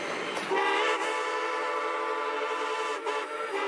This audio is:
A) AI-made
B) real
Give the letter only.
B